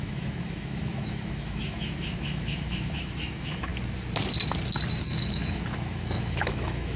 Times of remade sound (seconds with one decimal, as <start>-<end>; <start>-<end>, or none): 0.0-3.7; 5.0-7.0